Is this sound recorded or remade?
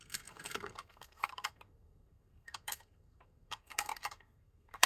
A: remade